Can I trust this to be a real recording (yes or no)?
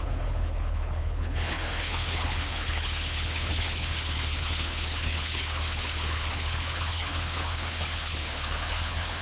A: no